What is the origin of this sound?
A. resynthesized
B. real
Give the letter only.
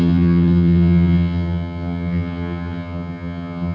A